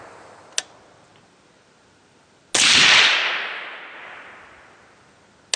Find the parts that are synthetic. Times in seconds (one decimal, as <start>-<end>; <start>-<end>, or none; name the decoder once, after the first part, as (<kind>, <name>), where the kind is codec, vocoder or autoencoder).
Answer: none